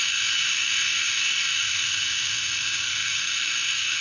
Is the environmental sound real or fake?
fake